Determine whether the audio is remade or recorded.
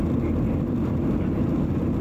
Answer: recorded